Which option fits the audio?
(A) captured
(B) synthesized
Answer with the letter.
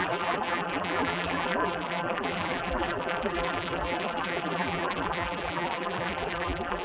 B